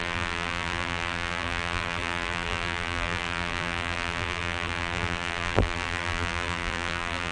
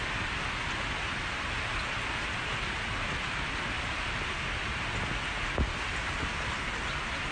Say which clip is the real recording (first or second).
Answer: second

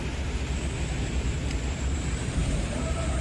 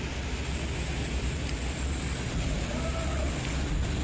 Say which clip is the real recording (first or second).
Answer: second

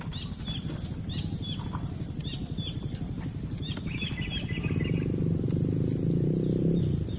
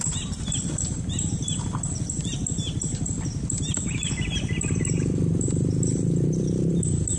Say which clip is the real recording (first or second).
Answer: first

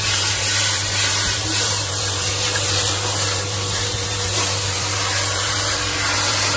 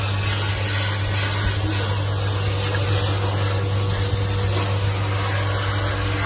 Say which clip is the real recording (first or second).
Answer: second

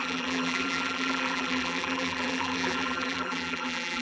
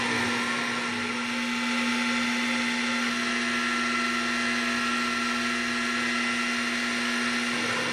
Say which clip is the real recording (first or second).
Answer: second